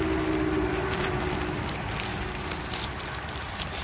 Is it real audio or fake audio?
real